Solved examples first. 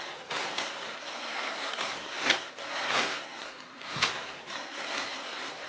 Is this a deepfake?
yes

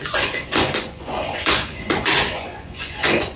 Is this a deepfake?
yes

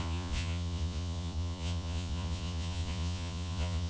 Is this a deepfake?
yes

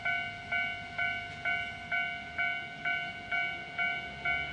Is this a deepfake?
no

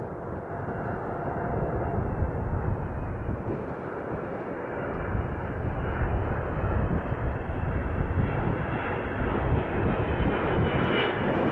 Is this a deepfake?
no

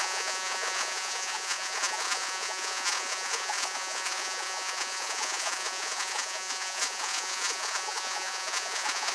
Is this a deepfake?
yes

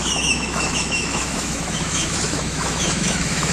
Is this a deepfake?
yes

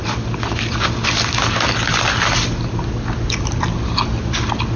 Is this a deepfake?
no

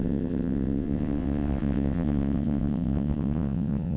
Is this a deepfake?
yes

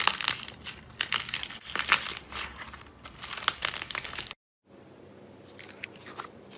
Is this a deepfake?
no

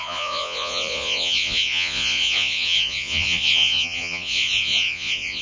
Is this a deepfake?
yes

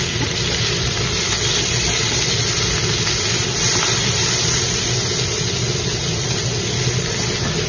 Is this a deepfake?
no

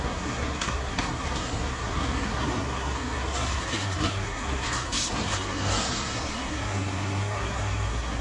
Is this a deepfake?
yes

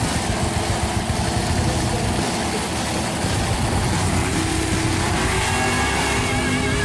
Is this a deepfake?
no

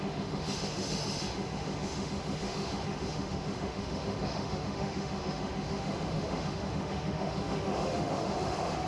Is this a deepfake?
yes